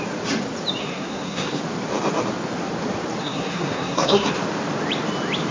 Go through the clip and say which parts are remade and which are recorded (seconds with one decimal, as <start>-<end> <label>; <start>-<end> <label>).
0.0-0.8 recorded; 0.8-1.6 remade; 1.6-3.2 recorded; 3.2-4.3 remade; 4.3-5.5 recorded